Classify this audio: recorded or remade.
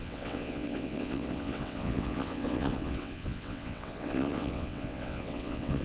remade